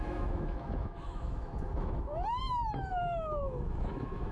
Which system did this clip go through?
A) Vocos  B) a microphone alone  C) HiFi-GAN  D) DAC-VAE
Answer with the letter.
D